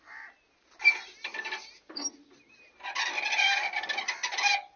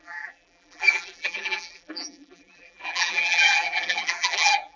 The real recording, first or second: first